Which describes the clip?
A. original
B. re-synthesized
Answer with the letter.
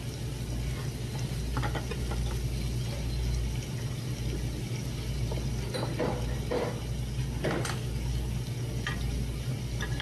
A